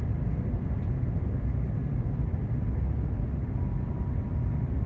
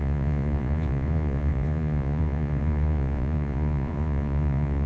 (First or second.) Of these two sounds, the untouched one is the first